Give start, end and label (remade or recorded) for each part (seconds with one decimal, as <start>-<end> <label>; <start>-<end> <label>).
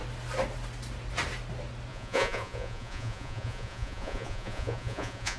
0.0-1.9 recorded; 1.9-5.4 remade